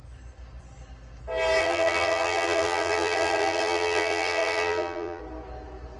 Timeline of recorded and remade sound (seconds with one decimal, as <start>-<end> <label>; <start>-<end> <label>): 0.0-1.6 recorded; 1.6-5.2 remade; 5.2-6.0 recorded